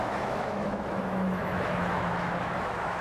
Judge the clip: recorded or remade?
remade